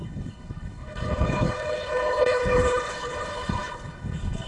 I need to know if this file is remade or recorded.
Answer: remade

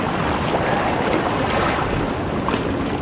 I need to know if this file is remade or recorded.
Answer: recorded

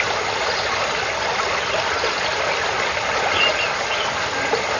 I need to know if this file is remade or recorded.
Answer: recorded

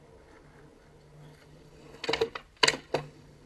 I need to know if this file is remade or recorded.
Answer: recorded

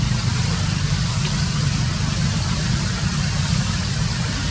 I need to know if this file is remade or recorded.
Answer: recorded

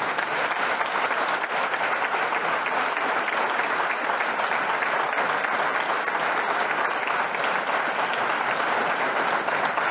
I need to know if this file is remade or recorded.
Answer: recorded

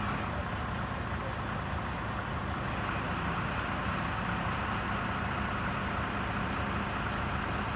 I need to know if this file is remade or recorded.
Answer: recorded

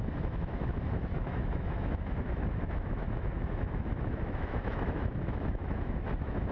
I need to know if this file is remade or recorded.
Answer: remade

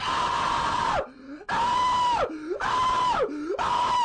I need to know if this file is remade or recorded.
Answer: recorded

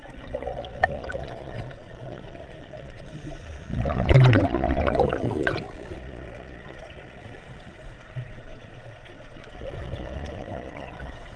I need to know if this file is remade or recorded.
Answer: remade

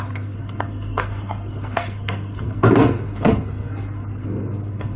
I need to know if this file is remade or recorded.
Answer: remade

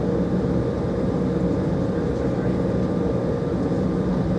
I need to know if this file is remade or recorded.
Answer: recorded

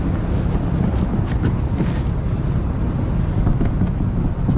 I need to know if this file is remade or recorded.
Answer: recorded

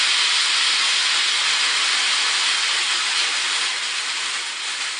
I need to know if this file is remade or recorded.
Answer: recorded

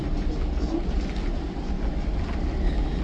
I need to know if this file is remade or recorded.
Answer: recorded